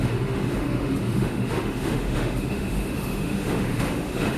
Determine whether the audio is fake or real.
fake